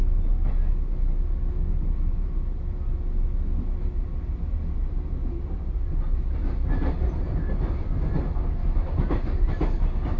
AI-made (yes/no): no